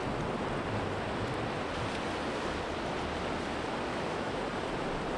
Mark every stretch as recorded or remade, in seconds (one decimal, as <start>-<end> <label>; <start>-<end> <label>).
0.0-3.9 recorded; 3.9-4.4 remade; 4.4-5.2 recorded